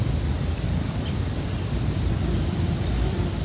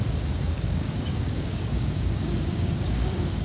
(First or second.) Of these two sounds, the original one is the first